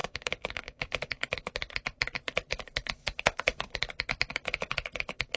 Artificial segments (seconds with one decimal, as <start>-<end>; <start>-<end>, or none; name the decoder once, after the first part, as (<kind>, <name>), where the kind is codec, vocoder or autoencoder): 0.0-1.5 (codec, DAC); 2.5-3.8; 4.3-5.4

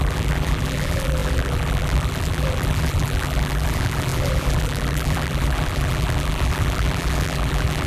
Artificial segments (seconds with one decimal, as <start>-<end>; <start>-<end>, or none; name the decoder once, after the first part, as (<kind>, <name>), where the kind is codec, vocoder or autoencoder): 0.0-7.9 (vocoder, BigVGAN v2)

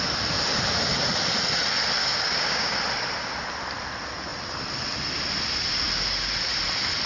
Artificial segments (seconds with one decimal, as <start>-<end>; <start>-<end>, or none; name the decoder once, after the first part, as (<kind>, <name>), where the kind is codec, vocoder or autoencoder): 2.0-2.8 (codec, DAC)

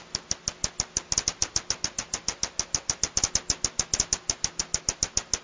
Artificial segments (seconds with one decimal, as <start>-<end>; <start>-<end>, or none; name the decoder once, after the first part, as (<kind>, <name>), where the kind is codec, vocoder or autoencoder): none

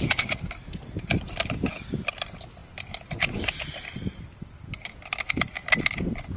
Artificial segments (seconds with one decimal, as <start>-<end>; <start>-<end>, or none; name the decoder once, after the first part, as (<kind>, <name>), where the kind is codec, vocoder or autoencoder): none

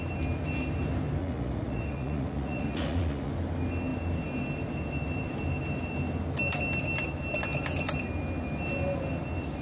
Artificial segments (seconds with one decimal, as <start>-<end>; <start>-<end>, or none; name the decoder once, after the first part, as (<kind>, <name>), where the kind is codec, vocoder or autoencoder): 1.2-3.3 (vocoder, Vocos)

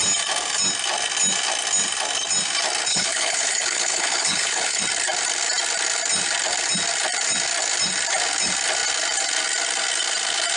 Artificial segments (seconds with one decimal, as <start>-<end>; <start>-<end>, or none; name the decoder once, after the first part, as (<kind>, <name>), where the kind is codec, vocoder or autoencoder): 2.9-4.8 (codec, HILCodec)

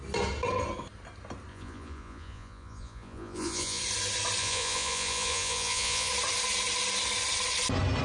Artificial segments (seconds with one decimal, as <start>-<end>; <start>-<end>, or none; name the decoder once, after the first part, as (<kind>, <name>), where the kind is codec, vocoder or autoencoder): 1.5-3.8 (vocoder, Vocos); 4.4-6.1